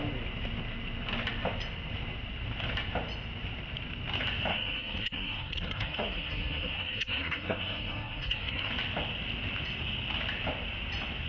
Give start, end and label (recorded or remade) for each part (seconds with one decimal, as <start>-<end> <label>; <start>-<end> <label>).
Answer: 0.0-4.5 recorded; 4.5-8.7 remade; 8.7-11.3 recorded